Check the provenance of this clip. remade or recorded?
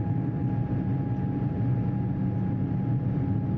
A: recorded